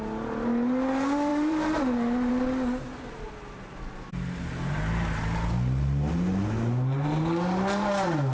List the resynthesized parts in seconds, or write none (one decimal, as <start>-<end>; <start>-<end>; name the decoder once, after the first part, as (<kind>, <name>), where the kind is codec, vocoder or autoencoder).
1.3-2.3 (vocoder, BigVGAN v2)